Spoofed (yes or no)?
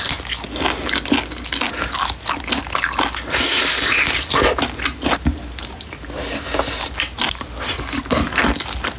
no